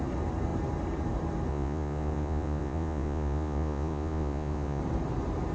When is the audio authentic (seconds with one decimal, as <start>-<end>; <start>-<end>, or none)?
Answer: 0.0-1.5; 4.8-5.5